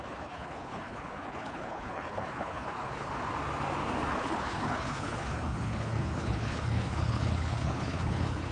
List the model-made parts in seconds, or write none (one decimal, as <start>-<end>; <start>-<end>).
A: 0.0-3.1; 4.1-8.5